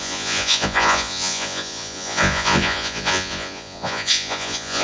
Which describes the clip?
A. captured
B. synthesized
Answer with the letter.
B